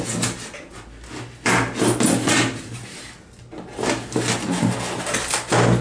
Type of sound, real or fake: real